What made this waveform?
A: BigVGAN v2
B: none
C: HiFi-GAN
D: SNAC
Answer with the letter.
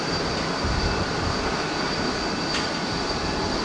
B